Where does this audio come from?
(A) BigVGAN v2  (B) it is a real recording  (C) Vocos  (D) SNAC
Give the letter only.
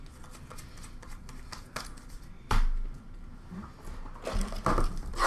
B